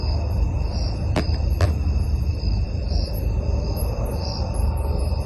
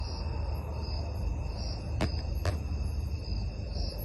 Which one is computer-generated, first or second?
first